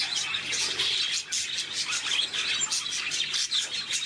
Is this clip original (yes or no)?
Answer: yes